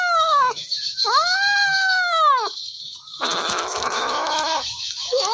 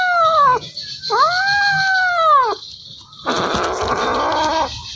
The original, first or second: second